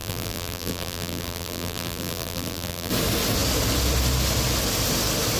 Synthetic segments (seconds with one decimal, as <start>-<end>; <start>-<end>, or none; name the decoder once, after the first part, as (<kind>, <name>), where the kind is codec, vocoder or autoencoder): 0.0-2.9 (vocoder, BigVGAN v2)